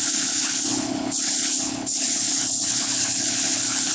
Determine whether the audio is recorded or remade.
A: remade